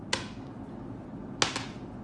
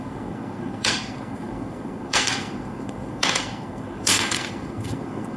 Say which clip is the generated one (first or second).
second